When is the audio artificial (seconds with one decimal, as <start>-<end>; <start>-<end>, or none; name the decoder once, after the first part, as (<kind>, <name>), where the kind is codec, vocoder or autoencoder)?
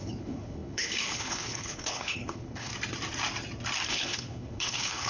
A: 0.0-2.7 (codec, HILCodec); 3.9-5.1